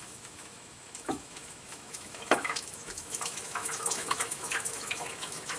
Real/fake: fake